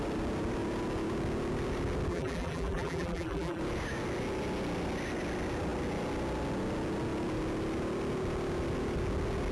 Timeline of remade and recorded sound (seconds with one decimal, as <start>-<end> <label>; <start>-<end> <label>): 0.0-2.1 recorded; 2.1-3.6 remade; 3.6-9.5 recorded